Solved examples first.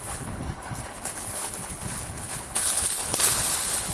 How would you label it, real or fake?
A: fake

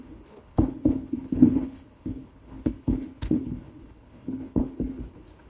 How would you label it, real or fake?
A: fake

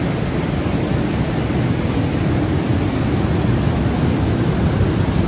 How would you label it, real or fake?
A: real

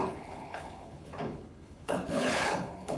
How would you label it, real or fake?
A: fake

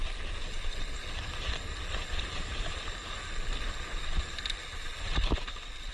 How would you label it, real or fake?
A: real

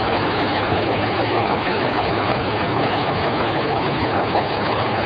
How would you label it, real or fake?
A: fake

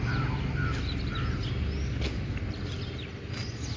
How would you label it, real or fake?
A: real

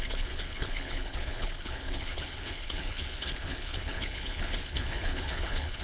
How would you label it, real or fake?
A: fake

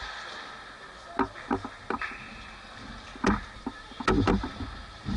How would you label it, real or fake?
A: real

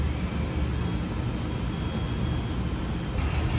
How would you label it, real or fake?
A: real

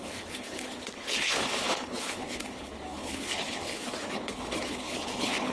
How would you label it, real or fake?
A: fake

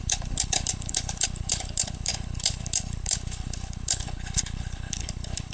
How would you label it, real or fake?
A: fake